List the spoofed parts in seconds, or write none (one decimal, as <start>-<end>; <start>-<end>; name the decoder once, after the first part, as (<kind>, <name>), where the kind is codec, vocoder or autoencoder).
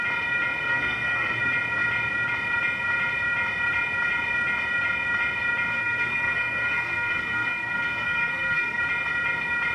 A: 0.6-1.4 (codec, SNAC); 5.7-8.8